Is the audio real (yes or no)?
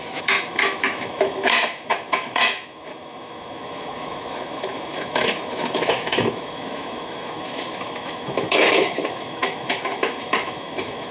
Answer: no